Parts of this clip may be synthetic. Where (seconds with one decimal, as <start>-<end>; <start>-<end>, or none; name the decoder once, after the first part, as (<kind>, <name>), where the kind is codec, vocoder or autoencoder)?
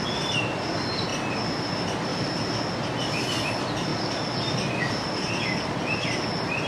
0.0-1.1 (vocoder, BigVGAN v2); 1.6-2.1; 3.5-3.9; 5.0-6.7